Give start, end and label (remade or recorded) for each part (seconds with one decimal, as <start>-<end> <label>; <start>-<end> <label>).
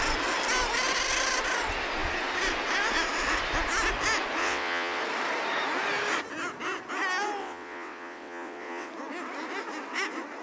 0.0-4.4 recorded; 4.4-5.0 remade; 5.0-7.4 recorded; 7.4-8.9 remade; 8.9-10.4 recorded